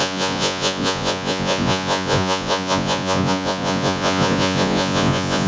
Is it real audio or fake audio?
fake